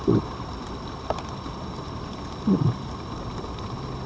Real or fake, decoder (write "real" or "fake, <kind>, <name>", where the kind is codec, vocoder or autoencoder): real